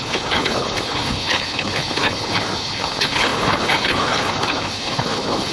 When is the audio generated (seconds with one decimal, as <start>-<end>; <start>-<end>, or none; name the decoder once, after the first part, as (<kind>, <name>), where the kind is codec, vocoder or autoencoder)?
0.0-5.5 (codec, HILCodec)